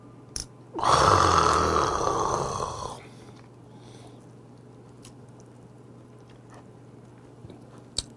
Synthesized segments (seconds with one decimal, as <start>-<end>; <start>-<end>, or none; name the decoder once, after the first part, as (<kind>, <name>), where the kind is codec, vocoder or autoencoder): none